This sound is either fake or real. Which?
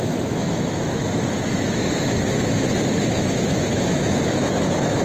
fake